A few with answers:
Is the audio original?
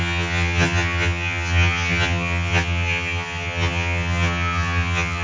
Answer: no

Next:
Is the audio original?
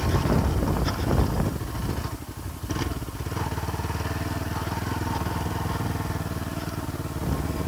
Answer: yes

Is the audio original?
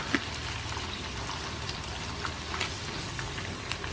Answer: yes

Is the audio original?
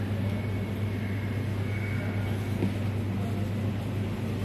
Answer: yes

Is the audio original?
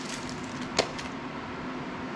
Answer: yes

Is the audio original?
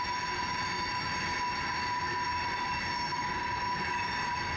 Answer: yes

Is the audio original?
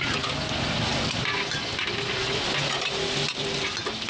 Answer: yes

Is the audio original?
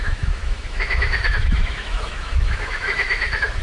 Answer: no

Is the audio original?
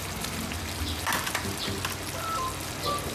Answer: yes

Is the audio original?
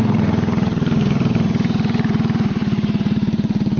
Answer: no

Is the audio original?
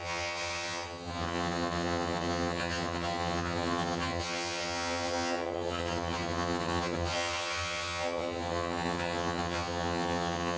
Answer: no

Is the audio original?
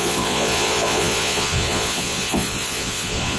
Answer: no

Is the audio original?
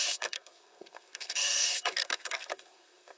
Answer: no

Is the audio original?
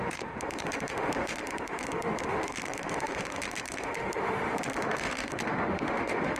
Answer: no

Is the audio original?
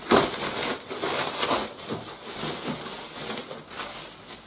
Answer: yes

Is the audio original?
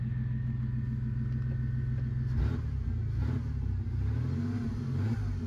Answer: yes